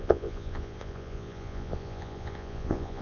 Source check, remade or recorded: remade